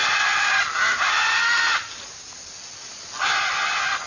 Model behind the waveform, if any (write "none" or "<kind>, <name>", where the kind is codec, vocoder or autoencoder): none